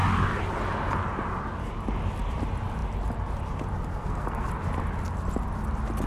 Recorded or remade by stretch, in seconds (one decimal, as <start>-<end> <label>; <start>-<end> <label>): 0.0-3.9 recorded; 3.9-4.5 remade; 4.5-6.1 recorded